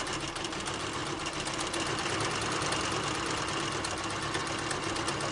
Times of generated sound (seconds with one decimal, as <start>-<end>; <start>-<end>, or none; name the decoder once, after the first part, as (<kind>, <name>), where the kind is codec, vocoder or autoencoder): 1.0-2.8 (vocoder, BigVGAN v2)